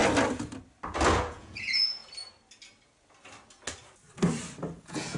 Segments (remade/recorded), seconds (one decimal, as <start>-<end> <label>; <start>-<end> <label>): 0.0-1.2 recorded; 1.2-2.0 remade; 2.0-4.8 recorded; 4.8-5.2 remade